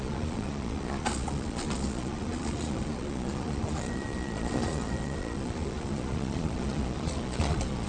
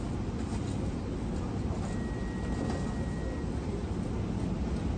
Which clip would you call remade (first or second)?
first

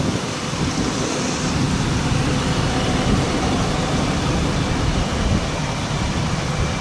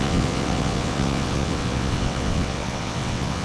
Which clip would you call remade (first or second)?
second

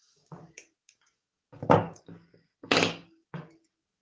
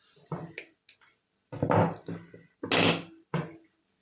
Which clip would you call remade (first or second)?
first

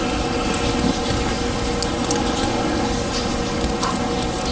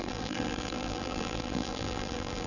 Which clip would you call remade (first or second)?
second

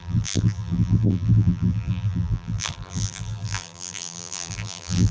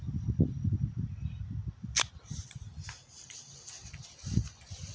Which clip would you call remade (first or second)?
first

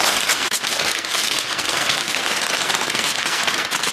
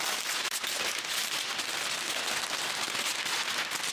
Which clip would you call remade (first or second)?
first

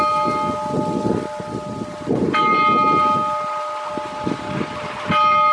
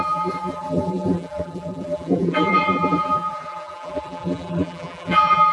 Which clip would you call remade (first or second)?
second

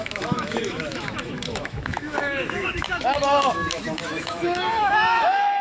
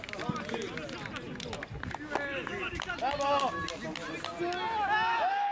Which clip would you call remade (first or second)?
first